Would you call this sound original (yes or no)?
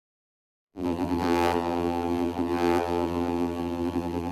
no